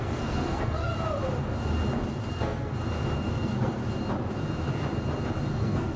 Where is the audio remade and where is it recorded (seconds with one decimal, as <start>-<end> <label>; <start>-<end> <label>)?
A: 0.0-0.9 remade; 0.9-2.3 recorded; 2.3-2.7 remade; 2.7-3.3 recorded; 3.3-3.8 remade; 3.8-5.5 recorded; 5.5-6.0 remade